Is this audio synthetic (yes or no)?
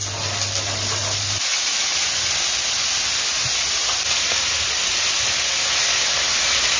no